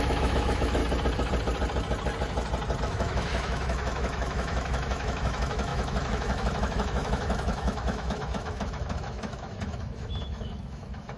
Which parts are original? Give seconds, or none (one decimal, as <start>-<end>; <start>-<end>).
0.8-2.8